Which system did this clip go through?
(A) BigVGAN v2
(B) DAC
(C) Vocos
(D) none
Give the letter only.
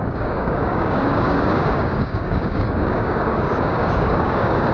B